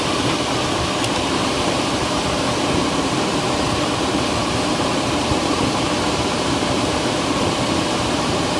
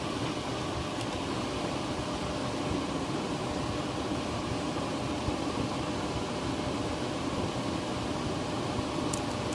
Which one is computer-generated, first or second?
first